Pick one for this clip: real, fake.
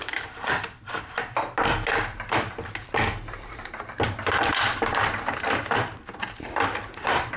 fake